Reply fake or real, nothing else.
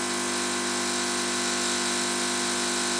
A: real